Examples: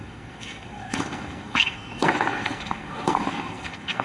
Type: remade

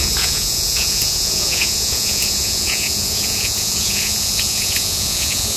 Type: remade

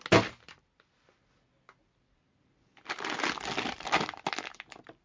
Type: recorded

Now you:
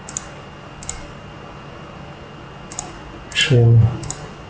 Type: recorded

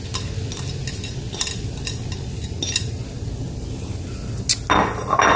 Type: recorded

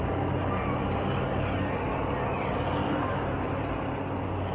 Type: recorded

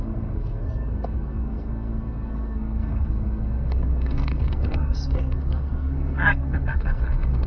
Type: remade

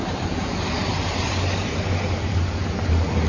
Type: remade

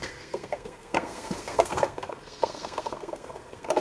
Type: remade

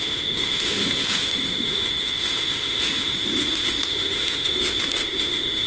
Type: remade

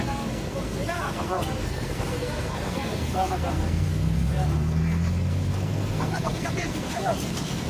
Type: remade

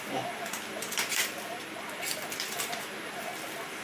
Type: remade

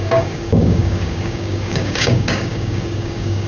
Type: remade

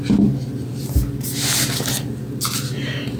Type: recorded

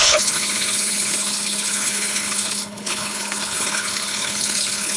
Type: remade